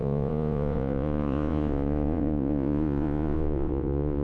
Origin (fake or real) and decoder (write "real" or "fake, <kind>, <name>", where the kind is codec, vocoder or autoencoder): fake, vocoder, Vocos